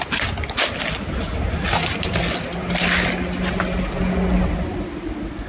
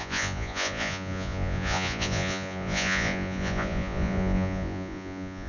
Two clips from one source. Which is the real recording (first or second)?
first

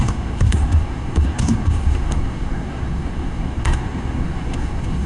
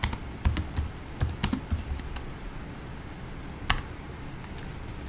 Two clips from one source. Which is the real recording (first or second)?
second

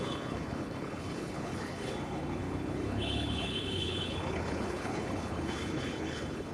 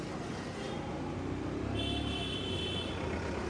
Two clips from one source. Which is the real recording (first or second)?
second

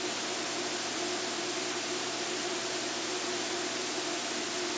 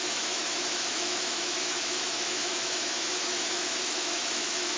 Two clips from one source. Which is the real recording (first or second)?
first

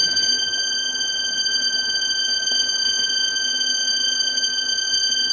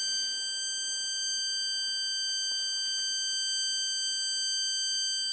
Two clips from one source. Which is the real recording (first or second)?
second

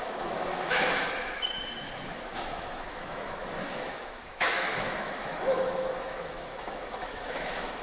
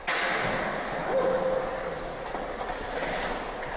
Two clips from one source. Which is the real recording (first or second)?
second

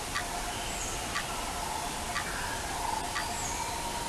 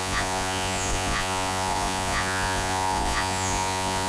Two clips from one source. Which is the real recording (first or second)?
first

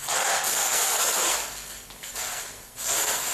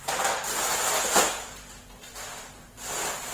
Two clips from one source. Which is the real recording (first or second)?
second